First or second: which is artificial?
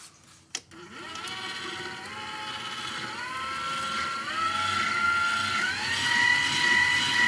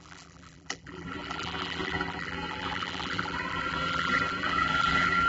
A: second